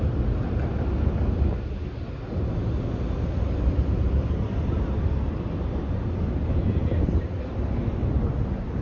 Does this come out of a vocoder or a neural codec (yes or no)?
no